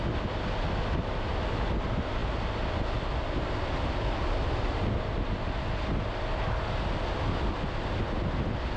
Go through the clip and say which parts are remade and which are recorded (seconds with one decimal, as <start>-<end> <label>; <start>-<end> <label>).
0.0-8.8 recorded